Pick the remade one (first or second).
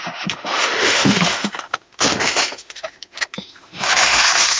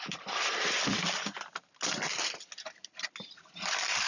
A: first